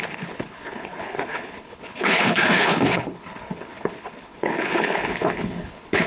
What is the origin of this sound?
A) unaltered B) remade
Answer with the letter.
B